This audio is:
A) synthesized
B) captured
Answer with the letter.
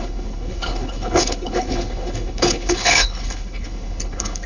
A